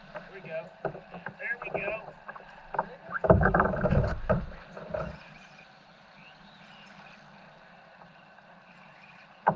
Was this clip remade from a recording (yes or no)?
no